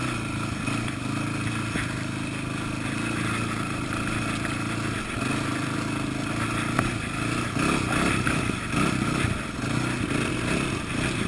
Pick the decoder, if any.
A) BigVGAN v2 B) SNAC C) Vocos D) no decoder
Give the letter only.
D